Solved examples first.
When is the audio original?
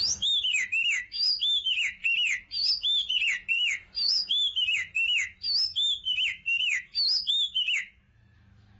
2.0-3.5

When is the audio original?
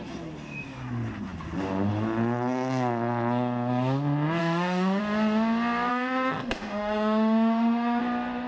0.0-4.4; 5.0-5.9; 8.0-8.5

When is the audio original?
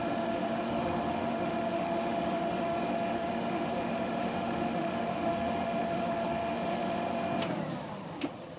7.1-8.6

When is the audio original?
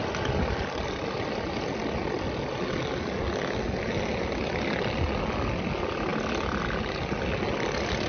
0.0-8.1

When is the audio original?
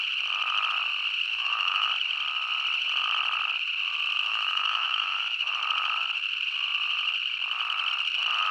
0.0-1.3; 1.9-4.3; 5.5-8.5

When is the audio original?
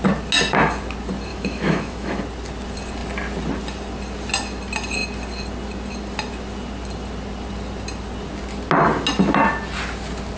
0.0-1.3; 2.2-10.4